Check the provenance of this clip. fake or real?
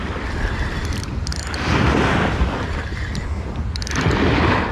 real